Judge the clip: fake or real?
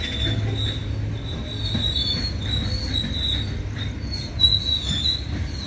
real